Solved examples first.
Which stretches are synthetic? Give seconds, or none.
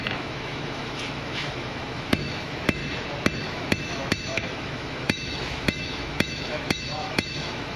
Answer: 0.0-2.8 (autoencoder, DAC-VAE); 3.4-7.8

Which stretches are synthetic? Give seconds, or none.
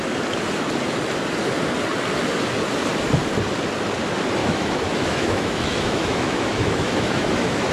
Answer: 4.4-7.7 (autoencoder, DAC-VAE)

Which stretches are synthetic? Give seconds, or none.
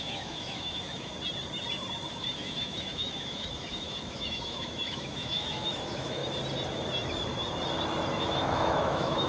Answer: 0.0-1.1 (autoencoder, DAC-VAE); 2.1-6.2; 8.2-9.3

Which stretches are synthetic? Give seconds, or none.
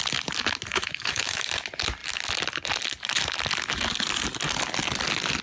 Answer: 0.7-1.4 (autoencoder, DAC-VAE)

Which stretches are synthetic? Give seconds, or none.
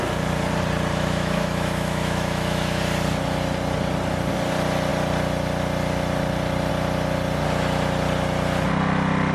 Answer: 0.9-2.8 (autoencoder, DAC-VAE)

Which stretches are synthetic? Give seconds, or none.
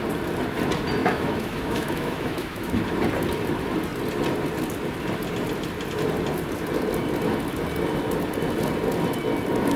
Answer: 1.0-2.8 (autoencoder, DAC-VAE)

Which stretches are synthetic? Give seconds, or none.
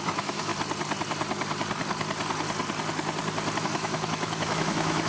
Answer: 0.0-0.5 (autoencoder, DAC-VAE); 3.6-5.1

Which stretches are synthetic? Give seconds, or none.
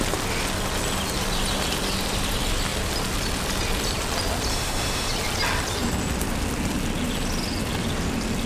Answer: 4.5-5.1 (autoencoder, DAC-VAE)